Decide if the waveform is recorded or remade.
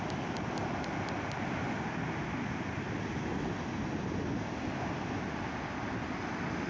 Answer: recorded